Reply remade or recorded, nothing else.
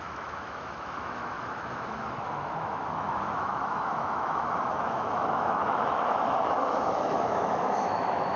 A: remade